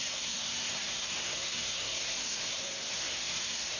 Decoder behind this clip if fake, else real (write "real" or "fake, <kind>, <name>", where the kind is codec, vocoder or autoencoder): fake, codec, SNAC